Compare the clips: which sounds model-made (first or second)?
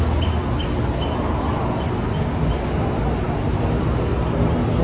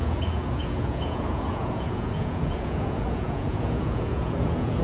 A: second